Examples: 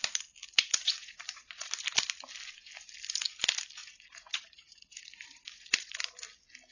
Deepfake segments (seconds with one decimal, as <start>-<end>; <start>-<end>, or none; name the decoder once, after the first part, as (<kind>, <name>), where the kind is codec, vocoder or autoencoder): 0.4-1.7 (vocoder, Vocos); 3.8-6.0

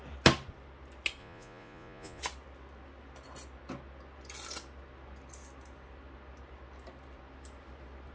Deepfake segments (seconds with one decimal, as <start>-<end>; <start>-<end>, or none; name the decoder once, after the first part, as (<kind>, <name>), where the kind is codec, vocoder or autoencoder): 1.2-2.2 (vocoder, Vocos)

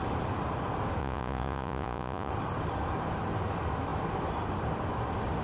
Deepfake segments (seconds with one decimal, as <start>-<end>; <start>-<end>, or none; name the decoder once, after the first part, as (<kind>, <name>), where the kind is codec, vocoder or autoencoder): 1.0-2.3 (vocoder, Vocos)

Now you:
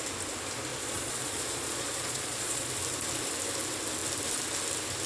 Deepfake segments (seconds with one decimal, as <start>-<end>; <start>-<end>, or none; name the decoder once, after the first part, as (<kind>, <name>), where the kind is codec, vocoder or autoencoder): 0.7-2.7 (vocoder, Vocos)

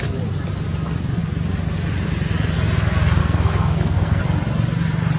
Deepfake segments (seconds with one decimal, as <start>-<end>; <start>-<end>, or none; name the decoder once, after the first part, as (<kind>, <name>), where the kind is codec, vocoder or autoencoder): 3.2-4.2 (codec, SNAC)

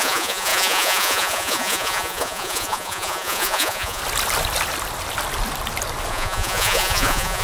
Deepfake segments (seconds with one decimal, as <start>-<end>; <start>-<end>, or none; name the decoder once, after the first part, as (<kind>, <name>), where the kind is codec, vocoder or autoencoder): 0.0-4.0 (vocoder, Vocos); 6.1-7.4

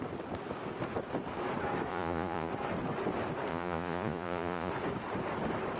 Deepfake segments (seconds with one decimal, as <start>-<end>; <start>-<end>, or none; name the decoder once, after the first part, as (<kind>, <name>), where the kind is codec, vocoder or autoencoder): 1.9-2.5 (vocoder, Vocos); 3.5-4.7

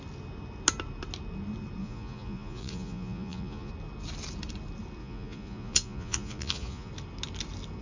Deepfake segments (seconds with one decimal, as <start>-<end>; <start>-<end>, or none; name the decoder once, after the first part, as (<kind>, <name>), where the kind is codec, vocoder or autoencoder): 1.8-3.7 (vocoder, Vocos); 5.0-6.9